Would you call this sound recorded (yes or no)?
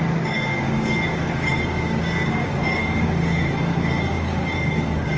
no